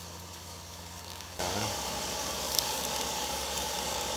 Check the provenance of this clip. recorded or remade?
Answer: remade